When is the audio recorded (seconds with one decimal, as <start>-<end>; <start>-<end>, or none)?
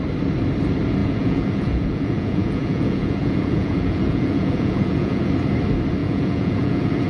0.0-1.0; 5.3-6.0